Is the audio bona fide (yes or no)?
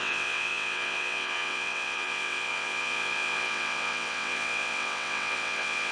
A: no